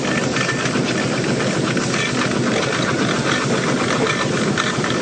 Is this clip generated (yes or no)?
no